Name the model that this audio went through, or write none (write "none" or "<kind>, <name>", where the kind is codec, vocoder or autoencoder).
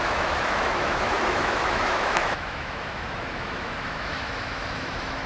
autoencoder, DAC-VAE